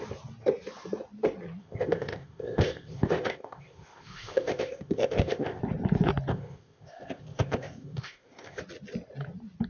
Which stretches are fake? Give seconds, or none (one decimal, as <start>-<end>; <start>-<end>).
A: 1.6-5.6; 6.3-8.6